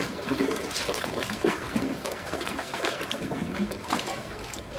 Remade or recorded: remade